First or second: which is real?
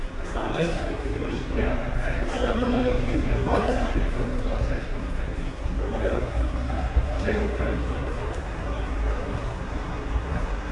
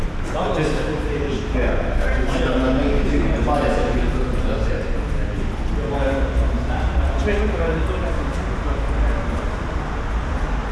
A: second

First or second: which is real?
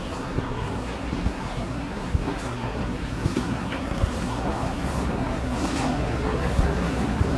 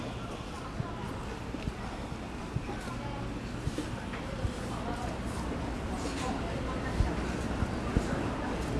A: second